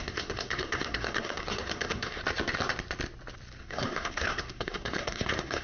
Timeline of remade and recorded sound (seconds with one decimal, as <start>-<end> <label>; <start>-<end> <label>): 0.0-2.2 remade; 2.2-3.6 recorded; 3.6-5.6 remade